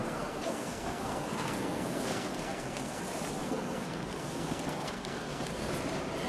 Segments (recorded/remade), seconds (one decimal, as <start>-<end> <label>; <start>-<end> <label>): 0.0-3.0 remade; 3.0-3.4 recorded; 3.4-5.7 remade; 5.7-6.3 recorded